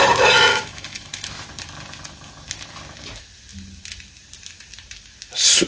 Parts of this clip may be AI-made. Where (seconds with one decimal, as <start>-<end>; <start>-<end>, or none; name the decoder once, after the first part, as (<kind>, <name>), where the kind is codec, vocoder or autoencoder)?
0.5-1.3 (autoencoder, DAC-VAE)